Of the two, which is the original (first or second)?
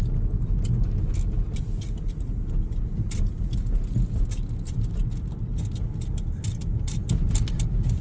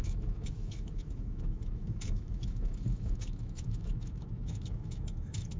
first